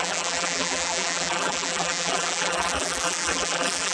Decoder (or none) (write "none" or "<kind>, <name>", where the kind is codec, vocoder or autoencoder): vocoder, BigVGAN v2